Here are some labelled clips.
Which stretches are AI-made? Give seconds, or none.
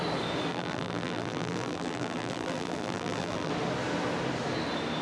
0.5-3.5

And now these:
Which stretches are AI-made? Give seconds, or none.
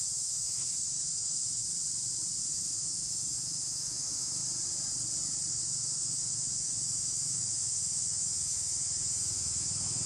0.0-1.6; 2.4-4.4; 5.5-10.1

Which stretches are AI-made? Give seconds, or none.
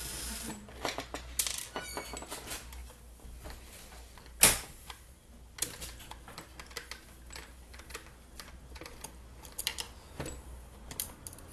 none